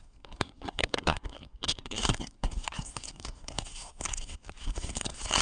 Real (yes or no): no